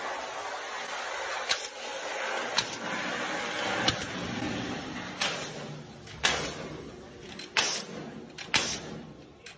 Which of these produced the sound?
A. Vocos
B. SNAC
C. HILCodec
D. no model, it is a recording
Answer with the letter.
D